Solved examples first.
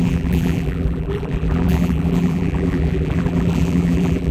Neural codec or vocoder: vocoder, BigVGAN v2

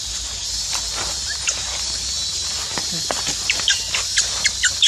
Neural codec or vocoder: vocoder, BigVGAN v2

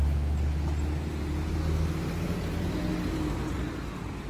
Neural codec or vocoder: none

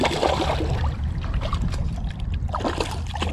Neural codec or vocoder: vocoder, BigVGAN v2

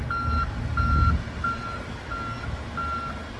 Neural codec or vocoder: none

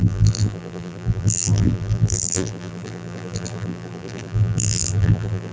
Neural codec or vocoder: vocoder, BigVGAN v2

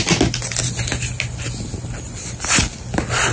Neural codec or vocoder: none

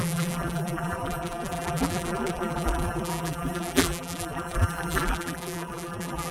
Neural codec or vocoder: vocoder, BigVGAN v2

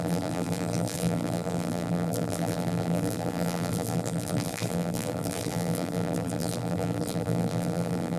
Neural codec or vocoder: vocoder, BigVGAN v2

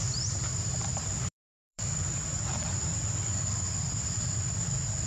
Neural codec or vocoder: vocoder, BigVGAN v2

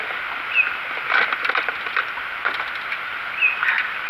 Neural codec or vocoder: none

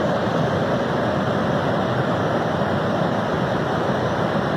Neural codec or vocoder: vocoder, BigVGAN v2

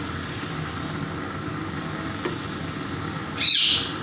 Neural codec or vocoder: none